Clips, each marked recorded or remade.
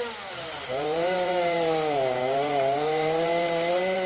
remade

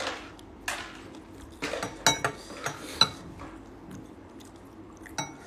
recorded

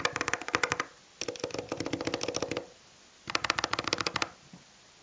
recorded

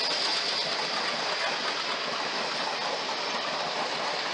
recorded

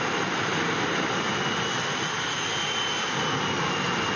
recorded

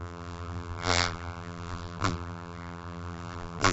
remade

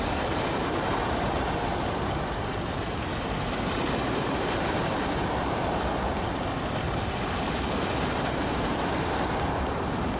remade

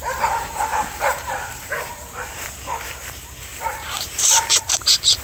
remade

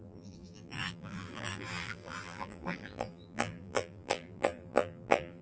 remade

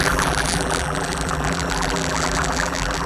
remade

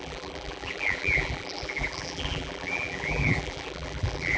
remade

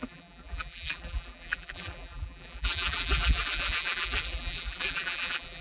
remade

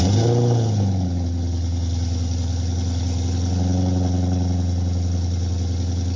recorded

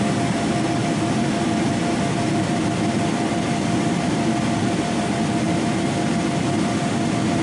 remade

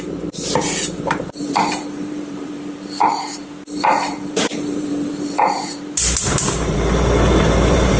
remade